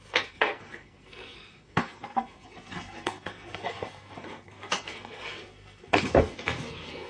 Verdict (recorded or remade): remade